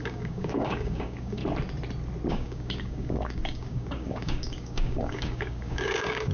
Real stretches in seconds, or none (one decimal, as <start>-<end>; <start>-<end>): 1.4-2.3